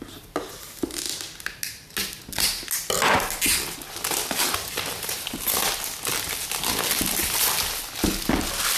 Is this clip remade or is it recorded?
recorded